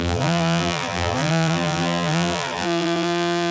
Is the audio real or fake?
fake